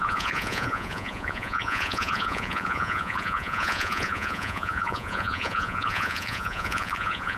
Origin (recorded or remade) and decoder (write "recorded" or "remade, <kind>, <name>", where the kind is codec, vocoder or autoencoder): remade, vocoder, Vocos